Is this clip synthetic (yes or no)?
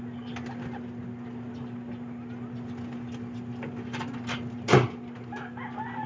no